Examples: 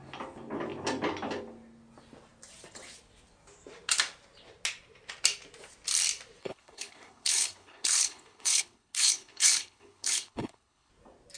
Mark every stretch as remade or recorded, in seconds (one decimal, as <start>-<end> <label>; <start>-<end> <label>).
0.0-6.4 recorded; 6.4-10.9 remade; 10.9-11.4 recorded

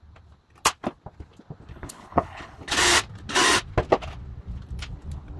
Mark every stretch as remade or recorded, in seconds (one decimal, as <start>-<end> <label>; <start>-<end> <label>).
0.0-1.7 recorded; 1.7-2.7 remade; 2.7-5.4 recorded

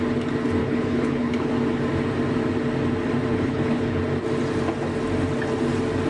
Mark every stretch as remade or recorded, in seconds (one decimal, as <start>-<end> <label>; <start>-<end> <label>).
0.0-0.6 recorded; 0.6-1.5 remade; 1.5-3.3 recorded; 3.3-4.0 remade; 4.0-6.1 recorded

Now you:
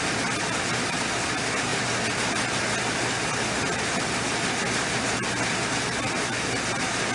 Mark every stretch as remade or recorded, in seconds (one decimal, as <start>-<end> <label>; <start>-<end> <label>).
0.0-7.1 recorded

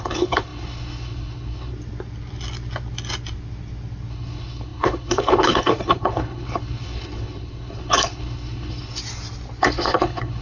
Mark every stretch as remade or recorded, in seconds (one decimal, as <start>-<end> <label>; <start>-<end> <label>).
0.0-1.7 remade; 1.7-4.1 recorded; 4.1-9.0 remade; 9.0-9.6 recorded; 9.6-10.4 remade

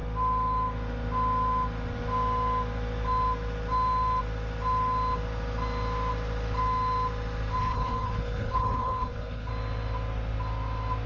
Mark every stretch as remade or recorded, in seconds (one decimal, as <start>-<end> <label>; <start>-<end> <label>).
0.0-7.6 recorded; 7.6-9.5 remade; 9.5-11.1 recorded